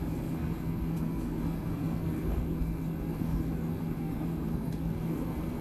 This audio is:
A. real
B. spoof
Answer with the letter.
B